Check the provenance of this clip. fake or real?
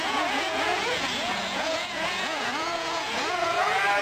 fake